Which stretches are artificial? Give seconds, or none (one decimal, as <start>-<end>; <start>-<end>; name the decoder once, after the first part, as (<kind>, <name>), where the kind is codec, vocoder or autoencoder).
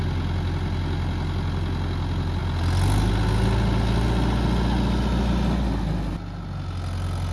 none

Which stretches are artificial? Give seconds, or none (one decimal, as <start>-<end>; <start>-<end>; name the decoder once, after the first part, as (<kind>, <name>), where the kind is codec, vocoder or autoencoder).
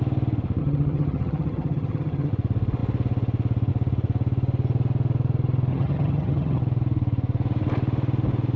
0.6-2.3 (vocoder, HiFi-GAN); 5.7-6.6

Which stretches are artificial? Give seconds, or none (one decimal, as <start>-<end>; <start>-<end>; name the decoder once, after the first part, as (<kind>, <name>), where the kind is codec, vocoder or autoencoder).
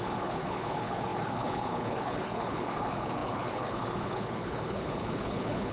0.0-5.7 (codec, HILCodec)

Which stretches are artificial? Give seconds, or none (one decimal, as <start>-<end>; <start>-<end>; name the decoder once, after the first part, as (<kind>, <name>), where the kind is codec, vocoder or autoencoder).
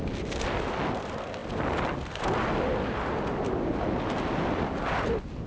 none